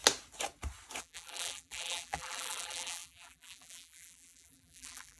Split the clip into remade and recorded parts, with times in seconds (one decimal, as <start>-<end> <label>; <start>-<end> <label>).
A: 0.0-1.0 recorded; 1.0-5.2 remade

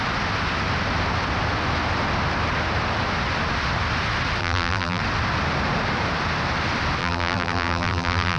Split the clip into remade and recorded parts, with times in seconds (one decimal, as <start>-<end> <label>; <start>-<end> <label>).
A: 0.0-4.4 recorded; 4.4-5.0 remade; 5.0-7.0 recorded; 7.0-8.4 remade

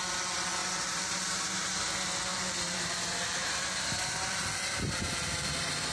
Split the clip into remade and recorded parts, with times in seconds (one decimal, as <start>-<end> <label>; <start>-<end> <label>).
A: 0.0-0.6 recorded; 0.6-1.9 remade; 1.9-2.3 recorded; 2.3-2.9 remade; 2.9-3.4 recorded; 3.4-4.3 remade; 4.3-5.9 recorded

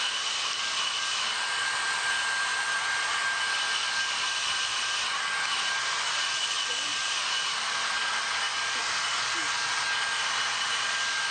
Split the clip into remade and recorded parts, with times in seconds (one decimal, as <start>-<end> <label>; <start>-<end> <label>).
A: 0.0-11.3 recorded